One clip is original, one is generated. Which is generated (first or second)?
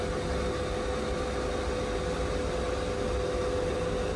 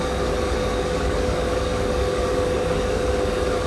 second